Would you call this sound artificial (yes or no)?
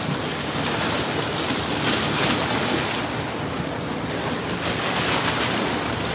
no